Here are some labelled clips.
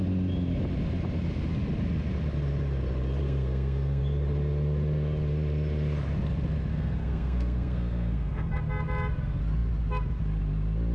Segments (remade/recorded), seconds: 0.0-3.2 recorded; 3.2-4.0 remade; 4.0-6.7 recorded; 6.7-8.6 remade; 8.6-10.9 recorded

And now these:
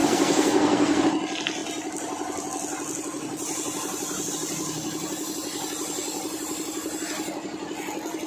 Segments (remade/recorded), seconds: 0.0-1.0 remade; 1.0-8.3 recorded

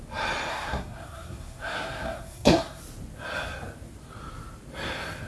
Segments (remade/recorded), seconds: 0.0-0.5 recorded; 0.5-2.8 remade; 2.8-5.3 recorded

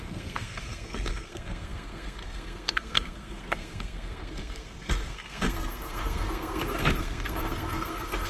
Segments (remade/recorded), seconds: 0.0-8.3 remade

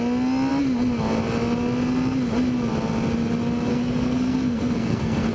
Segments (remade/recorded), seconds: 0.0-3.7 recorded; 3.7-5.3 remade

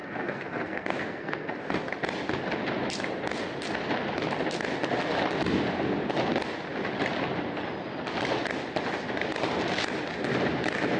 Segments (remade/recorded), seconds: 0.0-1.6 remade; 1.6-11.0 recorded

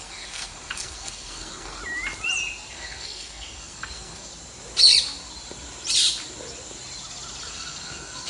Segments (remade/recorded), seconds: 0.0-1.8 remade; 1.8-2.7 recorded; 2.7-4.3 remade; 4.3-7.4 recorded; 7.4-8.3 remade

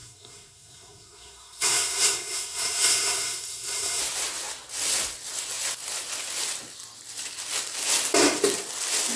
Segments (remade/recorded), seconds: 0.0-4.0 remade; 4.0-9.2 recorded